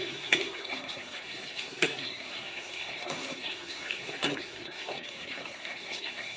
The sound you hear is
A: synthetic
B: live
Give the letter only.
A